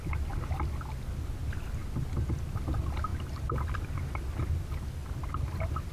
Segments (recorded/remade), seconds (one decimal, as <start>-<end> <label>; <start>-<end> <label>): 0.0-5.9 recorded

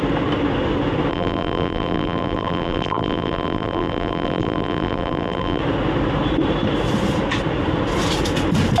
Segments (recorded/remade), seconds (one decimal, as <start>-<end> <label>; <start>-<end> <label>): 0.0-1.1 recorded; 1.1-5.6 remade; 5.6-8.8 recorded